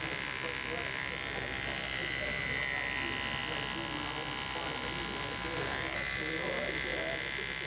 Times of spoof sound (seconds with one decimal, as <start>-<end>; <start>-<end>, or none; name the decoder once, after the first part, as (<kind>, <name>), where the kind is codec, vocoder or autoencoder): none